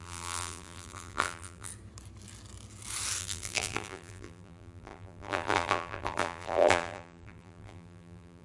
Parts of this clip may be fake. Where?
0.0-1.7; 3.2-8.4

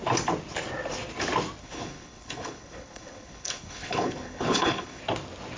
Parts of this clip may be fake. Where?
1.6-5.0